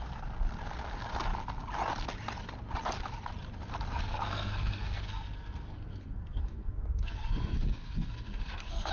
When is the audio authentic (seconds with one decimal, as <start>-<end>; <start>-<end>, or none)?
0.0-4.1